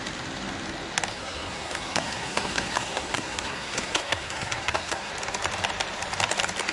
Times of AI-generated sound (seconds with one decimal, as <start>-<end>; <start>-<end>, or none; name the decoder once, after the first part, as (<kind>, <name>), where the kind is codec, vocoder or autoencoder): 1.1-5.1 (codec, SNAC)